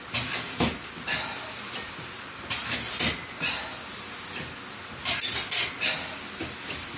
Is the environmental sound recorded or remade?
recorded